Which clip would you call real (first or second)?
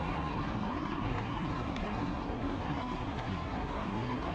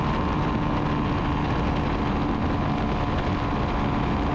second